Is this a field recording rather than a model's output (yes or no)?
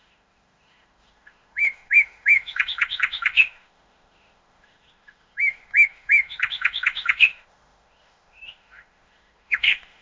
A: no